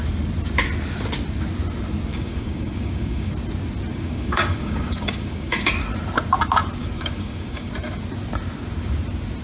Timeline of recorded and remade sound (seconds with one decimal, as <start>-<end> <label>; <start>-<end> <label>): 0.0-2.1 recorded; 2.1-3.3 remade; 3.3-3.9 recorded; 3.9-5.7 remade; 5.7-6.8 recorded; 6.8-7.7 remade; 7.7-9.4 recorded